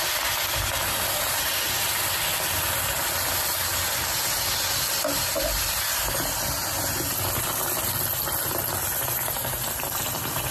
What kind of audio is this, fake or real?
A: real